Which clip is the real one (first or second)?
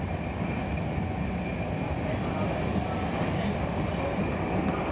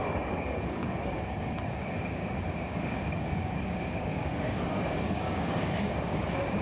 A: first